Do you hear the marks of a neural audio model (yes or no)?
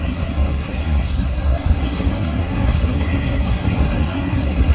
yes